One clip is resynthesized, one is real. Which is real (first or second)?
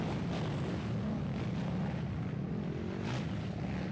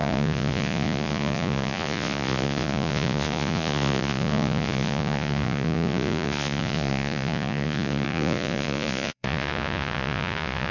first